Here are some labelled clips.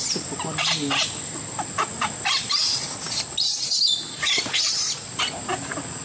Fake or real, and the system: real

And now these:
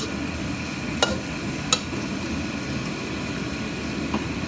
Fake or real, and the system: real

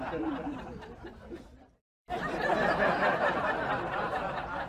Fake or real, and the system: fake, vocoder, BigVGAN v2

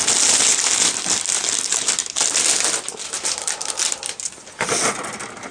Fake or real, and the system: real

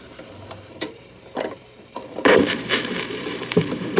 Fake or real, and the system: fake, vocoder, BigVGAN v2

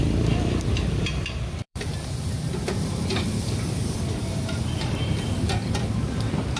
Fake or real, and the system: fake, vocoder, BigVGAN v2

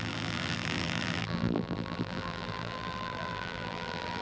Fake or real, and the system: fake, vocoder, BigVGAN v2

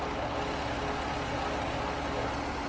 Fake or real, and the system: real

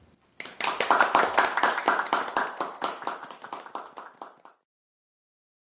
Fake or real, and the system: fake, vocoder, BigVGAN v2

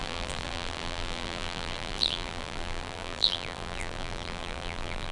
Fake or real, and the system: fake, vocoder, BigVGAN v2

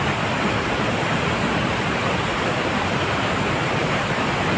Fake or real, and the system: fake, vocoder, BigVGAN v2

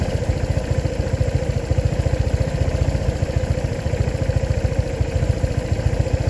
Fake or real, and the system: fake, vocoder, BigVGAN v2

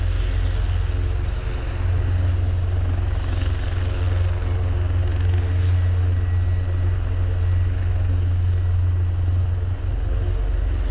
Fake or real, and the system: real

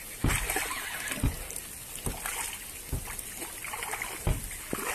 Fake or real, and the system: real